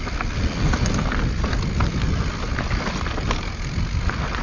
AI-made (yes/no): no